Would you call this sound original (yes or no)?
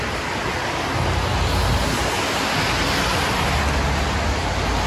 yes